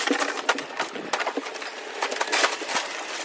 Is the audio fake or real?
real